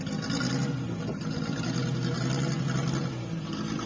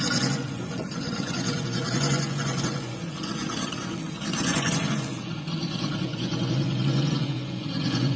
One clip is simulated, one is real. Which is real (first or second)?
first